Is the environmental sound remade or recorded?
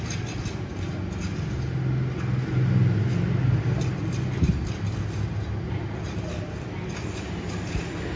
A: recorded